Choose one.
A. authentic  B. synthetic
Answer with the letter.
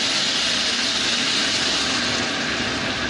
A